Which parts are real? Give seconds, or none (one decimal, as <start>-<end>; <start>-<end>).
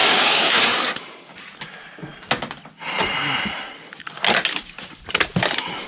0.6-5.9